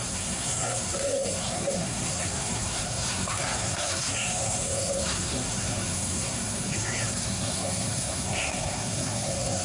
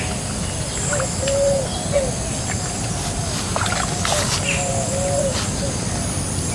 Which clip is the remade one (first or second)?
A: first